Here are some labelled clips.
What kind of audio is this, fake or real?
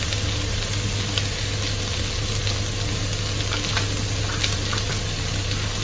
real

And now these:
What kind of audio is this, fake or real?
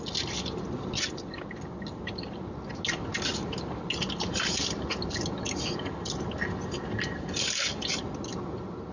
real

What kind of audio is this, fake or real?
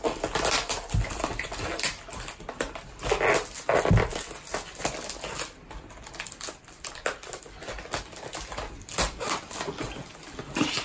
real